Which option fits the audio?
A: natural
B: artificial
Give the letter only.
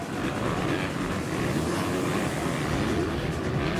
A